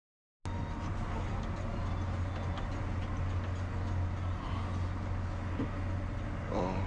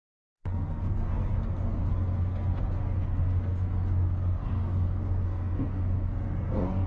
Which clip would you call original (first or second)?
first